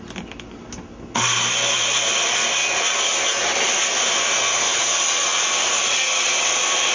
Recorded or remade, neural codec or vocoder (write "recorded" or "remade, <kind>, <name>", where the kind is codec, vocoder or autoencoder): recorded